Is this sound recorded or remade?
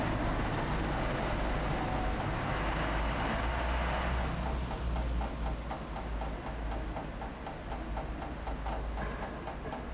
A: recorded